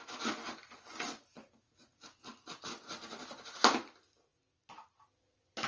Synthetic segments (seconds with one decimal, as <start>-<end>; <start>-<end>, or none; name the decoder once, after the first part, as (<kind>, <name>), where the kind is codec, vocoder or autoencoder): none